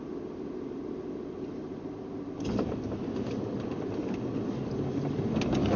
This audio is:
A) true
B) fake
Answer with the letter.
A